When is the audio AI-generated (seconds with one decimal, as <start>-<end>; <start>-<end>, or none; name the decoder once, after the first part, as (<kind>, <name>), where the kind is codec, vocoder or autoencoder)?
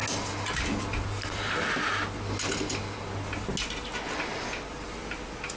4.3-5.6 (vocoder, BigVGAN v2)